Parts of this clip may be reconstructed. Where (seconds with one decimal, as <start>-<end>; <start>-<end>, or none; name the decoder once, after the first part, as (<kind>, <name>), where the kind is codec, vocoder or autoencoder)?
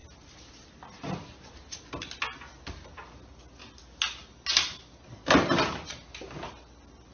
none